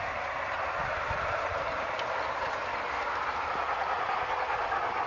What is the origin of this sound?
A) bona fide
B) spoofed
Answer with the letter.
A